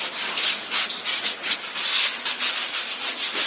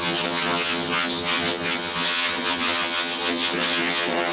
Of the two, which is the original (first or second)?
first